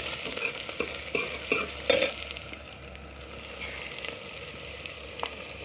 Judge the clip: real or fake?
real